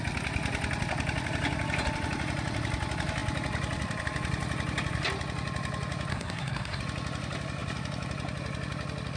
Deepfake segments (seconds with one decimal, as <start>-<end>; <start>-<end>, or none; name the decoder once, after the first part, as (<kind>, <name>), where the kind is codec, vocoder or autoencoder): 6.1-6.8 (codec, SNAC)